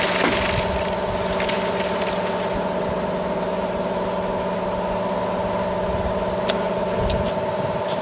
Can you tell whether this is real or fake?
real